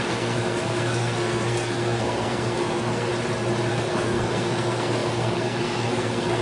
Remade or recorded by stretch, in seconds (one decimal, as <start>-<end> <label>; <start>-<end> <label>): 0.0-3.1 remade; 3.1-3.7 recorded; 3.7-6.4 remade